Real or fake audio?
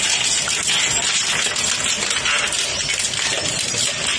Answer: real